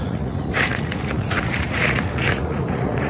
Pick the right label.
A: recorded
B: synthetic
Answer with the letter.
B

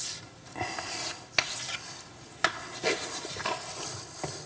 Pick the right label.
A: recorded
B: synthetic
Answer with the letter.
A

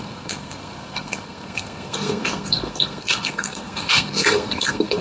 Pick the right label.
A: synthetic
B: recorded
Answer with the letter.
A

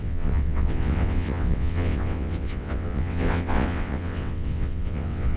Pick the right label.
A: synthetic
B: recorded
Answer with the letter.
A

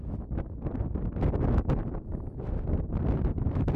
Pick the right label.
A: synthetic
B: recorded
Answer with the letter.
B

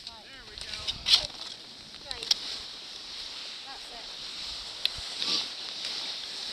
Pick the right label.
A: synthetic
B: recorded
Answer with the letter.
B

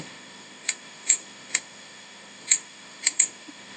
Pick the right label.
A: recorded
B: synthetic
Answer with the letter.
B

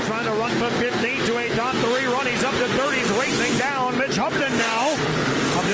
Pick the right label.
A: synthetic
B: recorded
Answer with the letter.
B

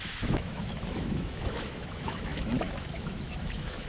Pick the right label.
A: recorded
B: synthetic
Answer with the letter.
B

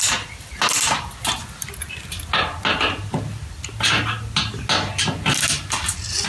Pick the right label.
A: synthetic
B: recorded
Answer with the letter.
B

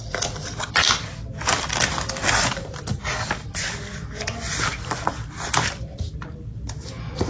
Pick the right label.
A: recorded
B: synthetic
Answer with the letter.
B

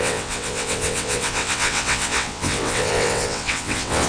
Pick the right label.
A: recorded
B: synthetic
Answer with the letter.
B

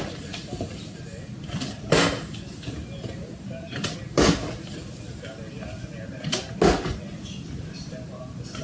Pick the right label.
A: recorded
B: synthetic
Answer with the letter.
A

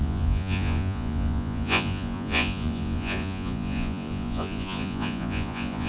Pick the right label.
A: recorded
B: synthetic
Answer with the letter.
B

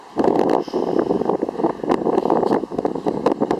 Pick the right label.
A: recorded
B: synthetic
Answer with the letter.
A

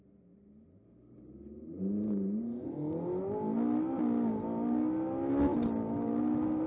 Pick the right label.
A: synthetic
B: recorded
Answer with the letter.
B